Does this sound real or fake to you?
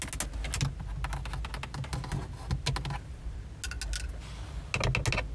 real